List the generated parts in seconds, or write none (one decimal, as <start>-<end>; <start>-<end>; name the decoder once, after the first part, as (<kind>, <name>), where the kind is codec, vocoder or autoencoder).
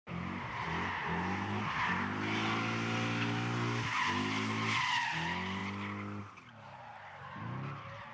none